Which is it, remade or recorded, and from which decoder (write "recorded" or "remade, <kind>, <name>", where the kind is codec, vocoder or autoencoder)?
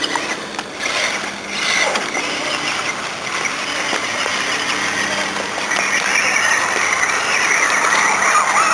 recorded